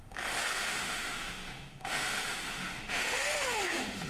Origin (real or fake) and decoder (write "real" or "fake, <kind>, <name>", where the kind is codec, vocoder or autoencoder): fake, autoencoder, DAC-VAE